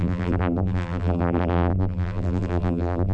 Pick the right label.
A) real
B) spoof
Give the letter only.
B